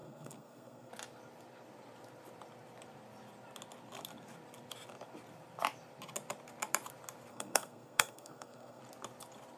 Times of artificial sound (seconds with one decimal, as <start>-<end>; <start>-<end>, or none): 0.0-0.9; 7.3-8.8